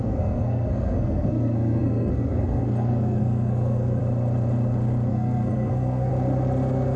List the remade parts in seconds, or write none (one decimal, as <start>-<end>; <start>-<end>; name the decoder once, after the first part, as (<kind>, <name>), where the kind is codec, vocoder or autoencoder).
0.0-4.0 (codec, SNAC); 5.1-6.1